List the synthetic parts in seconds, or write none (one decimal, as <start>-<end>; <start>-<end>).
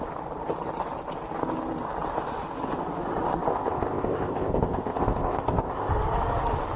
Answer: 3.5-5.9